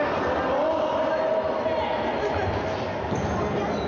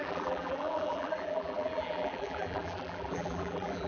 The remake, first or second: second